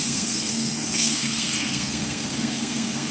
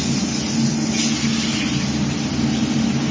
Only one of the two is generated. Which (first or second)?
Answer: first